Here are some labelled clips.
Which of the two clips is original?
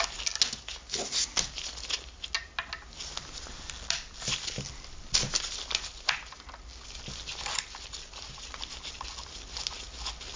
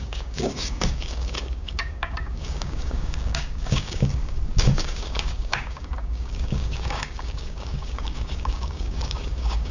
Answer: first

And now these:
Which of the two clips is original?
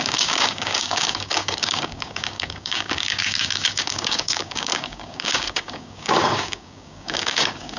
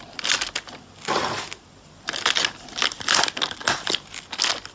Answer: second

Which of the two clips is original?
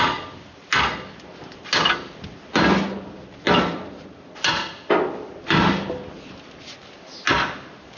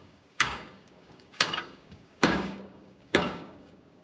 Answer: first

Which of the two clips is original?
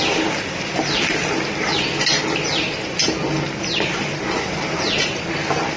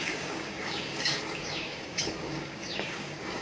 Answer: first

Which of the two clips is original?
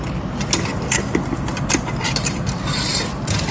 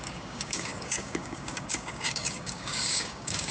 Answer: first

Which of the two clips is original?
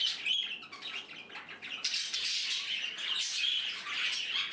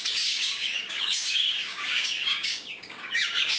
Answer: first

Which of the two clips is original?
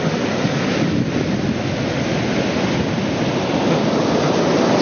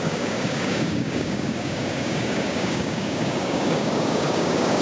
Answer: first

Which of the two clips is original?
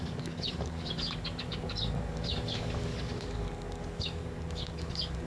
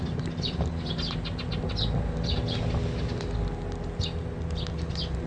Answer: second